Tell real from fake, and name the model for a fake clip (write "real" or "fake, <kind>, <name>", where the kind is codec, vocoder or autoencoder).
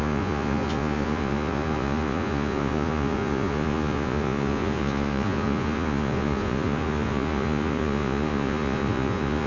fake, vocoder, Vocos